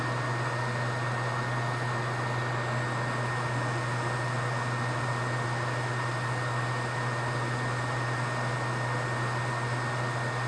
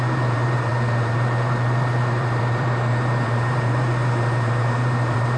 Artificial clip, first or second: second